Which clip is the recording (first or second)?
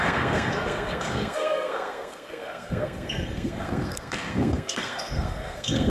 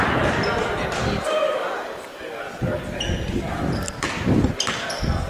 second